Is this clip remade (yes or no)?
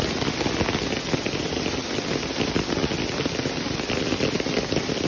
no